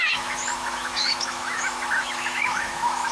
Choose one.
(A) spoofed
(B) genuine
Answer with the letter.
A